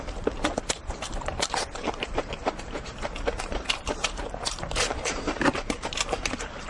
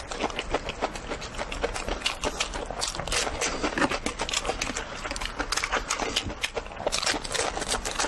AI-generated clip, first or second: first